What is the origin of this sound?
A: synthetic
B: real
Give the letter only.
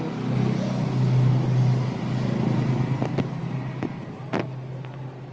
B